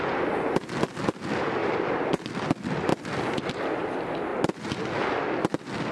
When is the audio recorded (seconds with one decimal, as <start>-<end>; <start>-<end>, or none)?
0.0-1.6; 2.1-5.9